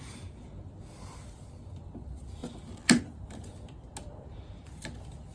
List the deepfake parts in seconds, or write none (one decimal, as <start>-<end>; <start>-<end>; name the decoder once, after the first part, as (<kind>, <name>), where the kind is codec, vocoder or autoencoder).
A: 2.4-3.5 (vocoder, BigVGAN v2)